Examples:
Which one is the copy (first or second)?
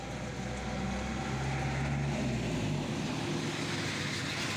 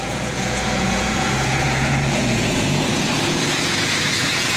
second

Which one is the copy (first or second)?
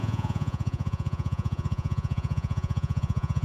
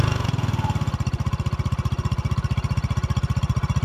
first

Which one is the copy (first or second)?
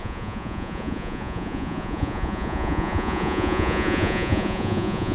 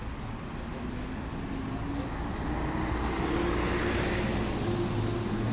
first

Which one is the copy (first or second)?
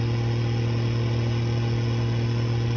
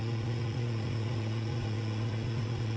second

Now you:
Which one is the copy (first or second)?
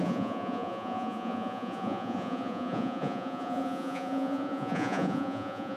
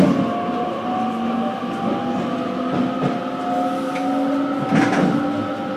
first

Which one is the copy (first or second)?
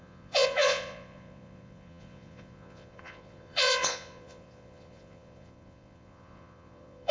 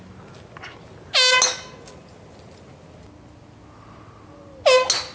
first